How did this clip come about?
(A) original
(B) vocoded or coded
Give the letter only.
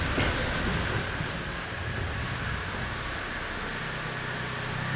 A